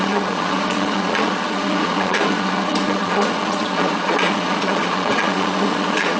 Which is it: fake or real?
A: fake